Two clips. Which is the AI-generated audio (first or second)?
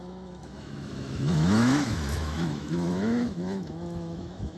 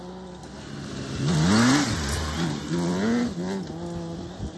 first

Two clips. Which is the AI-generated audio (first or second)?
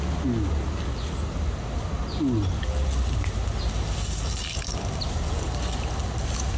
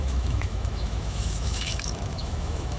second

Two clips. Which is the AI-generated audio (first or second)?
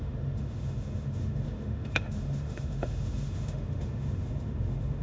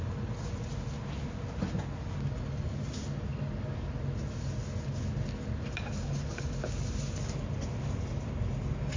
first